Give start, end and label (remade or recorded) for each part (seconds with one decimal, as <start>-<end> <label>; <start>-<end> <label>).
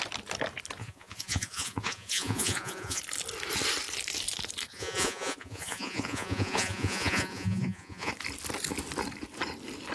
0.0-0.8 recorded; 0.8-3.0 remade; 3.0-4.7 recorded; 4.7-8.1 remade; 8.1-9.9 recorded